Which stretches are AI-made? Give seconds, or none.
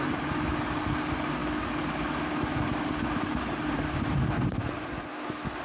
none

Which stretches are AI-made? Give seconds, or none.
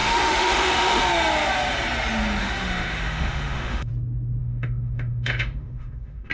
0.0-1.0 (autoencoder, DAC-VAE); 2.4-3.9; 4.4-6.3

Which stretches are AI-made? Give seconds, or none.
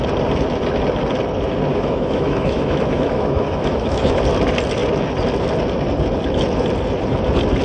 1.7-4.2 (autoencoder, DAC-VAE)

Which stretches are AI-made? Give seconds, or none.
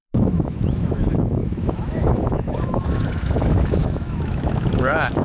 0.0-5.2 (autoencoder, DAC-VAE)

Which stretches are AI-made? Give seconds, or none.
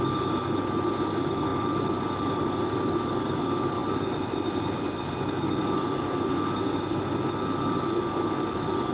none